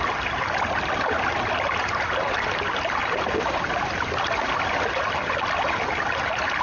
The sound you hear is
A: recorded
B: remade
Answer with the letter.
A